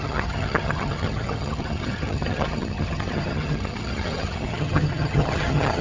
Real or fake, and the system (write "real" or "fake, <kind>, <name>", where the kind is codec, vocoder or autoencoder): fake, vocoder, HiFi-GAN